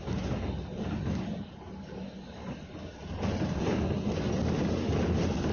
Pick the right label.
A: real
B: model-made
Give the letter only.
A